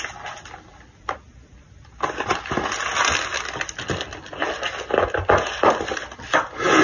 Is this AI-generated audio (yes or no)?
no